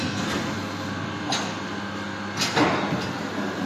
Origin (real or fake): real